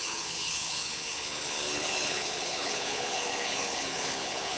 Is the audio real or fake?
fake